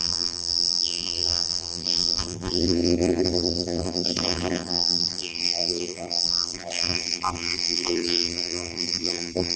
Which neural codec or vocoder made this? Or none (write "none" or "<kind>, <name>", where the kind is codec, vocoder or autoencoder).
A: vocoder, BigVGAN v2